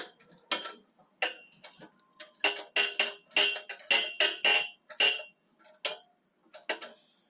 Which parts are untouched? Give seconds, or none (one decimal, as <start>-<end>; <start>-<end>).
0.0-7.3